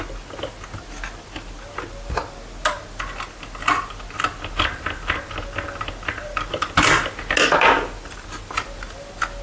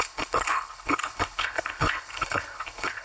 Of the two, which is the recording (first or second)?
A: first